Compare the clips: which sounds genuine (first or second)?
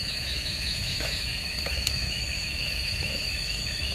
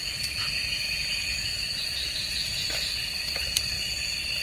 second